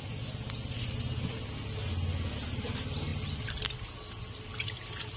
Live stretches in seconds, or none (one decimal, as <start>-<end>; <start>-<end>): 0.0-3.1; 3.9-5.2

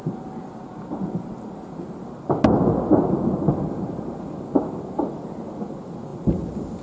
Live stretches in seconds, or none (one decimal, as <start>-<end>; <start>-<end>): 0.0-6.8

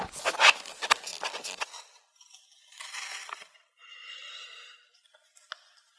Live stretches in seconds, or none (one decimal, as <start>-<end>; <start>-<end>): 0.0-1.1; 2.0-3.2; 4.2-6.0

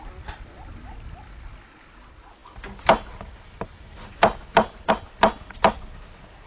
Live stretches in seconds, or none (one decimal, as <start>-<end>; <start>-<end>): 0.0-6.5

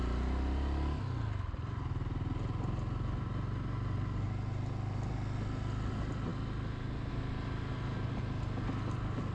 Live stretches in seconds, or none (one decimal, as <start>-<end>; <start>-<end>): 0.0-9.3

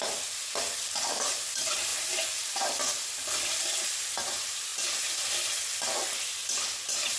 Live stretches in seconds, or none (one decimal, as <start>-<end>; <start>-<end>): 4.7-6.2